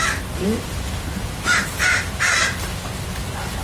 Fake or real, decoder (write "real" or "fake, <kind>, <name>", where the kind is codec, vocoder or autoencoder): real